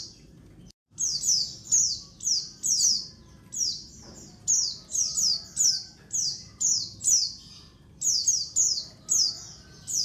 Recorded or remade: recorded